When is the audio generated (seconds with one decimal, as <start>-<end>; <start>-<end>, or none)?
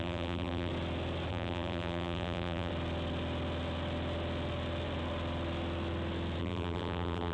0.0-0.7; 1.3-2.7; 6.4-7.3